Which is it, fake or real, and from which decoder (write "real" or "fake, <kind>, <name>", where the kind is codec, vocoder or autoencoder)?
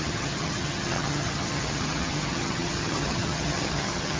fake, vocoder, HiFi-GAN